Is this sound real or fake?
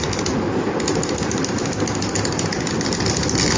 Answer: real